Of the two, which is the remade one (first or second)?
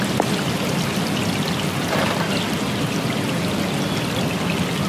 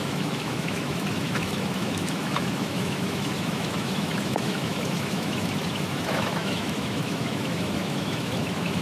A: second